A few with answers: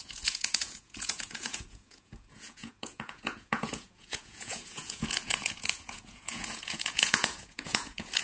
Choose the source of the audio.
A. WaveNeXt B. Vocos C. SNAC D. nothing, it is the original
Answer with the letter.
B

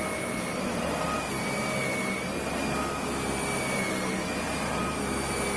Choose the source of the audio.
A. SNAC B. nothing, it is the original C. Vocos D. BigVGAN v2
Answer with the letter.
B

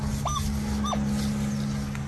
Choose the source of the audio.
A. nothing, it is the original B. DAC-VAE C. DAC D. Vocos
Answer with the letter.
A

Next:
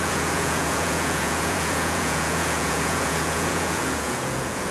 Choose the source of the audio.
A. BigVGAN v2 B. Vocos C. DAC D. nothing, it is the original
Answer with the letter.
B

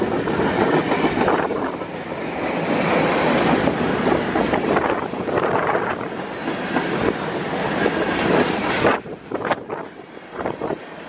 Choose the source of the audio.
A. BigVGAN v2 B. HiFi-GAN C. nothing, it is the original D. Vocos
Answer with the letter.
C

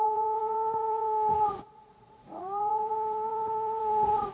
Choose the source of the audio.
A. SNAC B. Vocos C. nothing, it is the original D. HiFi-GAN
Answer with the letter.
B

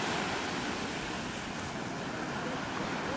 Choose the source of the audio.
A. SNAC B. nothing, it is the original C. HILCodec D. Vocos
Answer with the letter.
B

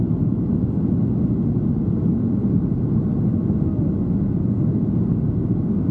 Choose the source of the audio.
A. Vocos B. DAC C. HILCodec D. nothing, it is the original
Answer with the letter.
D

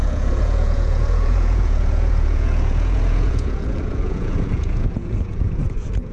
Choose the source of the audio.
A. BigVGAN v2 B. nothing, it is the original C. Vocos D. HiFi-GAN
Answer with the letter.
C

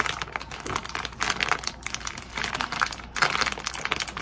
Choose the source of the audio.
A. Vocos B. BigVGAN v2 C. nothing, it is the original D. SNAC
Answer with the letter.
C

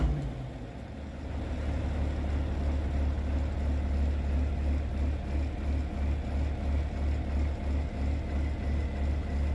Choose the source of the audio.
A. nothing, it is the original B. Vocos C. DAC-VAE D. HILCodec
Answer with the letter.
A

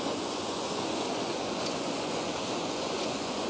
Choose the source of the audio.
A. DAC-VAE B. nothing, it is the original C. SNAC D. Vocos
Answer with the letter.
D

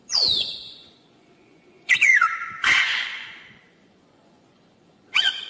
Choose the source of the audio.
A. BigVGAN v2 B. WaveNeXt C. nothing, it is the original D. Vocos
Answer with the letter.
D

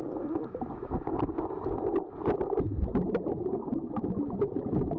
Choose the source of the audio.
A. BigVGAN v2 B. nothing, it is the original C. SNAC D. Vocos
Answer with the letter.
B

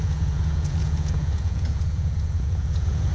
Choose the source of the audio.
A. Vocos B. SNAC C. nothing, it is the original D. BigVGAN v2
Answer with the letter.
A